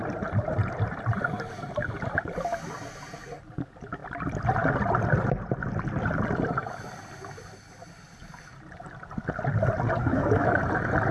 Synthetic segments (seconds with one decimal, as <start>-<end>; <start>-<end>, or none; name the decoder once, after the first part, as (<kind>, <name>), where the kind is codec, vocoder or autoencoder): 10.0-10.6 (autoencoder, DAC-VAE)